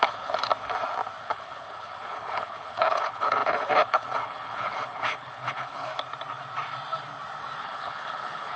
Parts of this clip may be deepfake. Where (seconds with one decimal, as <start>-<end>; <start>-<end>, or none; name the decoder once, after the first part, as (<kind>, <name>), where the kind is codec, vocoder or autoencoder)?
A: 0.0-0.5 (codec, HILCodec); 1.2-5.9; 7.6-8.6